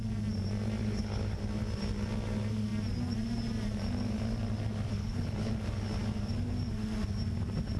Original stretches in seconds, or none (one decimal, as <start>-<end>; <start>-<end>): 0.0-0.8; 1.4-4.9; 5.5-7.8